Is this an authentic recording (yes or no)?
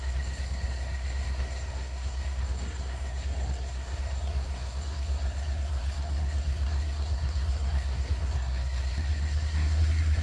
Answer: no